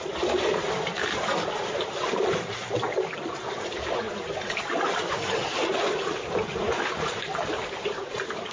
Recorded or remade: remade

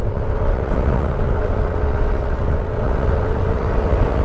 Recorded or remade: remade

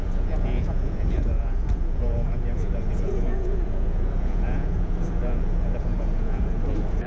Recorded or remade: remade